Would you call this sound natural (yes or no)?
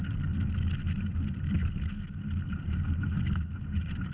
yes